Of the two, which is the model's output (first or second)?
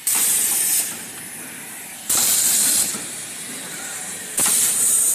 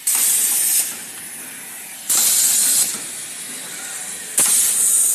first